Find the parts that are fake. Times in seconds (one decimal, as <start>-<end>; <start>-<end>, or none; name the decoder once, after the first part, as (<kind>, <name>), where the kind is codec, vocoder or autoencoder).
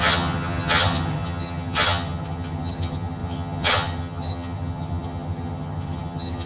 0.0-6.5 (vocoder, HiFi-GAN)